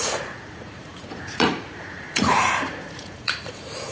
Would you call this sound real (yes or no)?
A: no